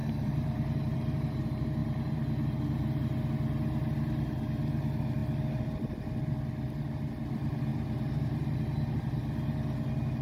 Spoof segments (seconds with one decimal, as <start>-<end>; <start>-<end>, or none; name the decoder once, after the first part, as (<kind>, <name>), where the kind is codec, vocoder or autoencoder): 0.0-1.4 (vocoder, BigVGAN v2); 1.8-3.2; 7.7-8.6